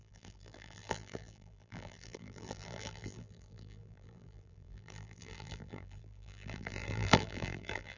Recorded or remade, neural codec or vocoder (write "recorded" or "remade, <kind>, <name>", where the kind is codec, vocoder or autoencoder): remade, vocoder, BigVGAN v2